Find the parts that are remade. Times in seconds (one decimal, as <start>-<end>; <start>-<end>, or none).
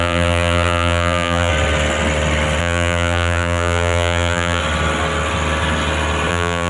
0.0-1.5; 2.6-4.6; 6.3-6.7